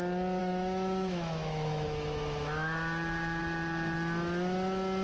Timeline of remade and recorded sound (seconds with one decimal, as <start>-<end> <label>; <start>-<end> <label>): 0.0-0.4 recorded; 0.4-3.4 remade; 3.4-5.0 recorded

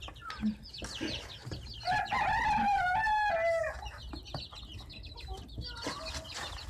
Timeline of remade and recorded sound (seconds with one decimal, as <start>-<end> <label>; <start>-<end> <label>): 0.0-6.7 recorded

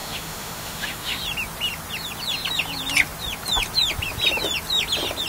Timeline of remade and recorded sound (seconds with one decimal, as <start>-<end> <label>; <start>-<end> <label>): 0.0-1.2 remade; 1.2-5.3 recorded

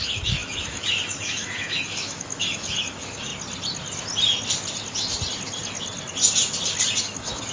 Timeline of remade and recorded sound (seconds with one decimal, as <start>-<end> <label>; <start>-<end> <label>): 0.0-3.3 remade; 3.3-7.0 recorded; 7.0-7.5 remade

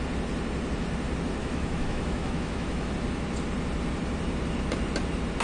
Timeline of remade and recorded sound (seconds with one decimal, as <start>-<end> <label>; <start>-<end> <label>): 0.0-1.4 recorded; 1.4-2.9 remade; 2.9-5.4 recorded

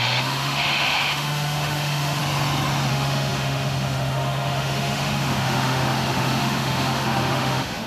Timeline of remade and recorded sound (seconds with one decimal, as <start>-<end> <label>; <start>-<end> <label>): 0.0-2.2 remade; 2.2-2.9 recorded; 2.9-7.9 remade

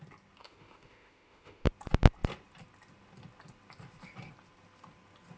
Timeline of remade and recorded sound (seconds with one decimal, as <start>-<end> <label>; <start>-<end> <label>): 0.0-0.4 recorded; 0.4-1.7 remade; 1.7-5.4 recorded

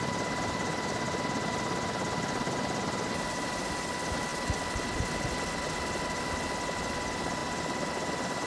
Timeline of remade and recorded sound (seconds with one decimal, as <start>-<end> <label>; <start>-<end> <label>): 0.0-8.5 recorded